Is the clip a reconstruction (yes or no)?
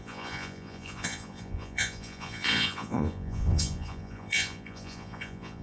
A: yes